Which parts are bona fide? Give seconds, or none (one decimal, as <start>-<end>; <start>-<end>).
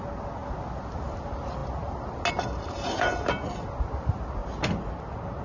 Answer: 0.0-5.4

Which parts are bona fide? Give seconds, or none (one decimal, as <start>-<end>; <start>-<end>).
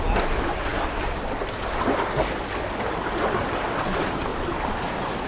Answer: 0.0-5.3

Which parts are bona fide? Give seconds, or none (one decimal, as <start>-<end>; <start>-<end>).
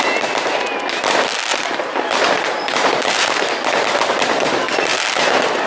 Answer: 0.0-1.5; 3.7-5.7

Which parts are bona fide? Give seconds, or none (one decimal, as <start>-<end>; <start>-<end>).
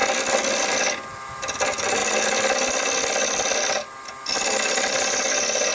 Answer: 0.0-5.7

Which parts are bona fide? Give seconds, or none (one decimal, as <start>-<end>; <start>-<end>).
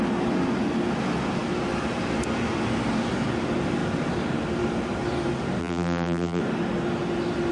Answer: 0.0-5.6; 6.4-7.5